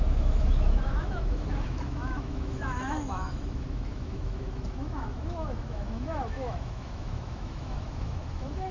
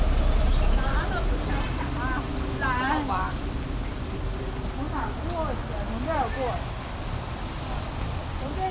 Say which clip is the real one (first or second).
second